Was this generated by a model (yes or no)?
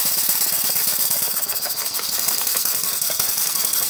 yes